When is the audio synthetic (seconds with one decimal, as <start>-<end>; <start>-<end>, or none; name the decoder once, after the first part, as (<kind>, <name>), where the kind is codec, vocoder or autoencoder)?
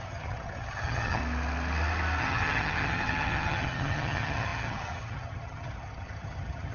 0.0-1.2 (vocoder, HiFi-GAN); 2.2-6.7